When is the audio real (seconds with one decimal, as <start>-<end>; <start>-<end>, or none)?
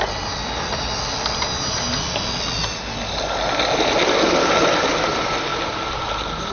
0.0-6.5